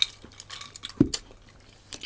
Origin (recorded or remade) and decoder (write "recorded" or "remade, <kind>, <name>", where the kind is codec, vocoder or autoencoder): recorded